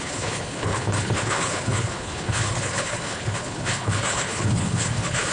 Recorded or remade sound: remade